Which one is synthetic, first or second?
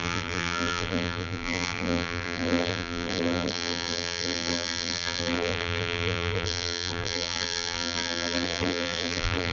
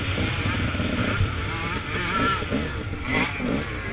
first